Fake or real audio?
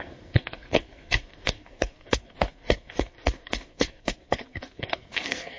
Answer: fake